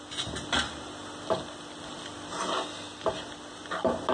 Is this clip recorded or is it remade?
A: recorded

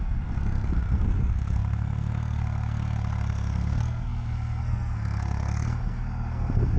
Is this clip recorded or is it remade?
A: remade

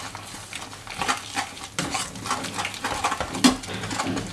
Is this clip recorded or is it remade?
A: recorded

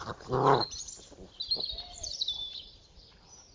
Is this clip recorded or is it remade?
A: remade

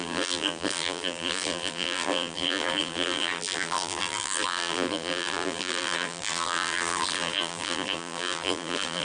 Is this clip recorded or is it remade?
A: remade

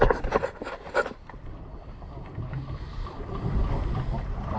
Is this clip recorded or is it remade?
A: recorded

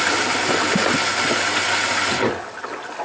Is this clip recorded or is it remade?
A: recorded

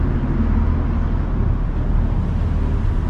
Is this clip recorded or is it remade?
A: recorded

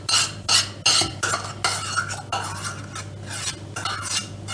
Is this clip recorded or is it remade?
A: recorded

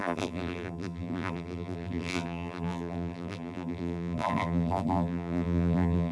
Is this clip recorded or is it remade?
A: remade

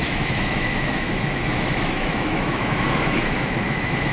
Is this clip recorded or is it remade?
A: remade